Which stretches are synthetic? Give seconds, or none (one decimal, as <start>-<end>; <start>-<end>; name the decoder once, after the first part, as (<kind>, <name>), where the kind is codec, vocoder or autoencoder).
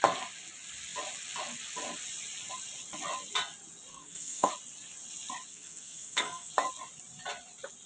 3.9-4.5 (codec, SNAC); 5.5-6.5